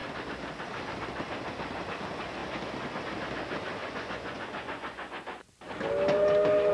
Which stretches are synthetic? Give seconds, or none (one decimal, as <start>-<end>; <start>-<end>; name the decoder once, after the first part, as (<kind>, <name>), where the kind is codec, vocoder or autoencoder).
3.8-5.5 (vocoder, Vocos)

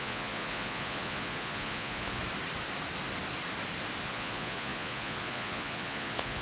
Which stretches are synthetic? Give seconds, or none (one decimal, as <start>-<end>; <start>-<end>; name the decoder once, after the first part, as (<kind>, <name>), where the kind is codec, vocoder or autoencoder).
0.0-2.2 (vocoder, Vocos); 4.0-6.4

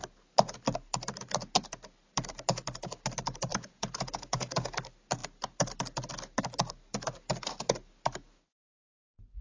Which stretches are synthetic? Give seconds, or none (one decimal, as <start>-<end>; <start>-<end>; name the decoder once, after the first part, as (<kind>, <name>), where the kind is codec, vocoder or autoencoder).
3.5-4.7 (vocoder, Vocos)

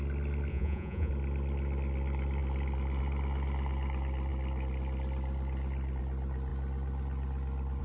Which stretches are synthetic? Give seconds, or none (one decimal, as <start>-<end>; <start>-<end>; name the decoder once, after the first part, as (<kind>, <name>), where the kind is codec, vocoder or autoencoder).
0.5-1.1 (vocoder, Vocos)